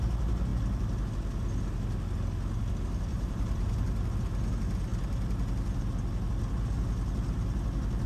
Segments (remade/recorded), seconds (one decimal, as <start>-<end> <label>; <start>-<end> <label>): 0.0-0.5 recorded; 0.5-1.1 remade; 1.1-3.1 recorded; 3.1-4.1 remade; 4.1-8.1 recorded